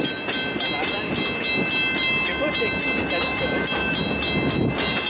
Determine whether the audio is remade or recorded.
recorded